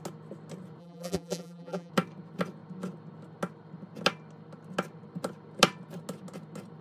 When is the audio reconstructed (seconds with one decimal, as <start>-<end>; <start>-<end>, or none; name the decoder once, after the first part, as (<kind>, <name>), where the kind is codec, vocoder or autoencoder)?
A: 0.8-1.9 (vocoder, BigVGAN v2)